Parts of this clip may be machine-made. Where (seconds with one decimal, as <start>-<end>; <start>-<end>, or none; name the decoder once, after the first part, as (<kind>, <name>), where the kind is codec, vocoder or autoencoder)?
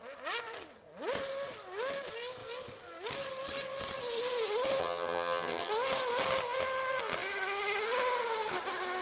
4.8-5.7 (vocoder, HiFi-GAN)